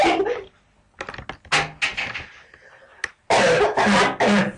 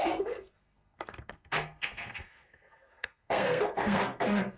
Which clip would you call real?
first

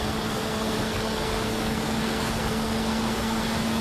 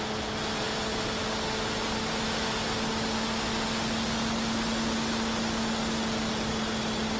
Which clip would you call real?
second